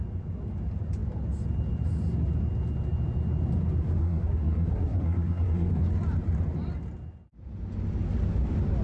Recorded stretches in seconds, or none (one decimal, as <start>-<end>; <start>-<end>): 0.0-4.0; 5.8-8.8